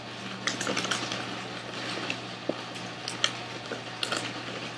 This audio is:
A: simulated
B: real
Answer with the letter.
B